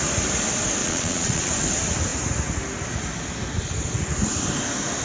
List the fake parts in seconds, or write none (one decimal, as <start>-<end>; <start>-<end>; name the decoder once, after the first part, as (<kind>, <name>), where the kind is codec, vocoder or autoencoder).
0.8-1.5 (vocoder, Vocos)